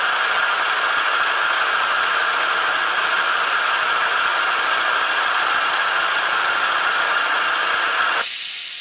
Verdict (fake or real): real